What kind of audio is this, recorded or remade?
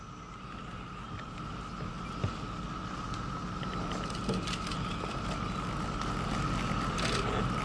recorded